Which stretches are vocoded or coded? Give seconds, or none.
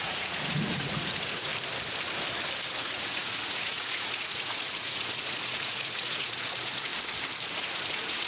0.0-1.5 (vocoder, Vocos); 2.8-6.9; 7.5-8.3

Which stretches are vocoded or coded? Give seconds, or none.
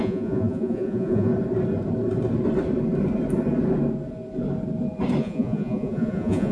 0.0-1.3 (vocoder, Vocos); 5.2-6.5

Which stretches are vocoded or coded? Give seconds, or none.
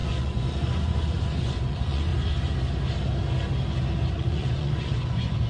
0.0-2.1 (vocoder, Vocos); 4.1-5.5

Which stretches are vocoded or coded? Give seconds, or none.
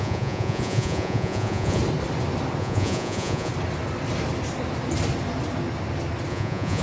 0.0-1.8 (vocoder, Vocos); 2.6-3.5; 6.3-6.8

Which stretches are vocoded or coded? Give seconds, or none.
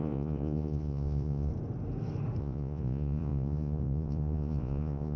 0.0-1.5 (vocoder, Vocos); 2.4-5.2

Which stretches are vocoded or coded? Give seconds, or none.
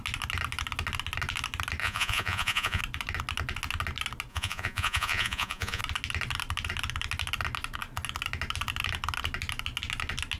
1.8-2.8 (vocoder, Vocos); 4.3-5.8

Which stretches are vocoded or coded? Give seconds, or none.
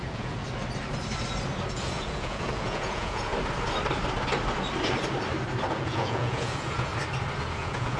0.0-0.4 (vocoder, Vocos); 1.7-3.3; 5.7-6.9; 7.4-8.0